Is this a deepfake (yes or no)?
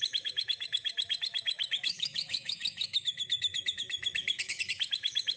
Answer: yes